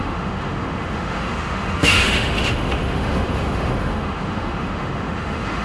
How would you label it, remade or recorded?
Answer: remade